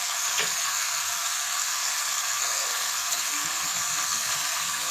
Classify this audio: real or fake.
fake